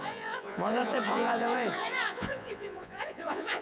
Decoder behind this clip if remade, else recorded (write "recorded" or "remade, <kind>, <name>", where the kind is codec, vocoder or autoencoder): remade, vocoder, Vocos